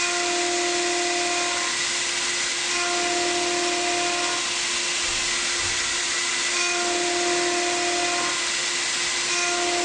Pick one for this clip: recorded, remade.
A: recorded